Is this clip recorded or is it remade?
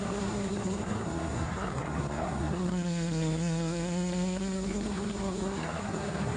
remade